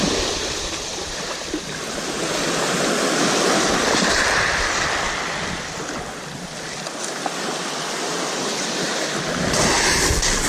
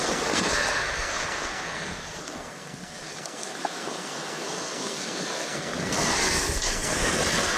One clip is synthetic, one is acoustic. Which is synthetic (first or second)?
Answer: second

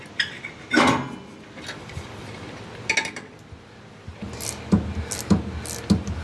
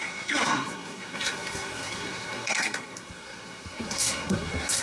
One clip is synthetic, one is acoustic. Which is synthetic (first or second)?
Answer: second